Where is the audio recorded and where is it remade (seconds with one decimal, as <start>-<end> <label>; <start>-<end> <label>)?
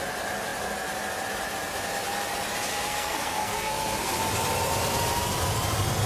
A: 0.0-2.7 recorded; 2.7-4.2 remade; 4.2-6.1 recorded